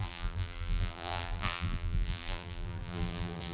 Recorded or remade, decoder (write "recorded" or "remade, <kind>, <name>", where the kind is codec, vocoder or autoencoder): remade, vocoder, BigVGAN v2